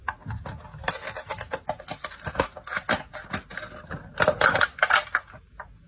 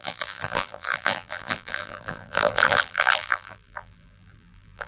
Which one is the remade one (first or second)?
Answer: second